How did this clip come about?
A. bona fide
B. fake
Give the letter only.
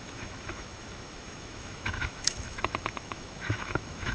B